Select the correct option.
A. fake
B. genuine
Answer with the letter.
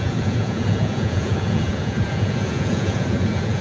A